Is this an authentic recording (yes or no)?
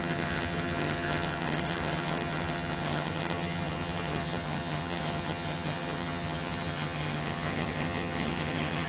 no